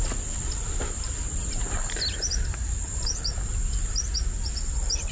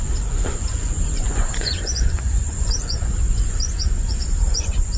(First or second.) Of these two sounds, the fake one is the second